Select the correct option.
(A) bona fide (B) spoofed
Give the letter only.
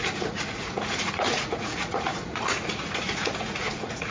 B